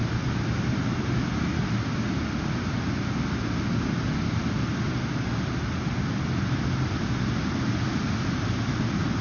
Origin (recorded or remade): recorded